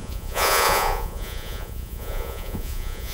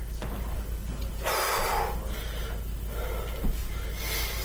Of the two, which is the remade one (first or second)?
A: first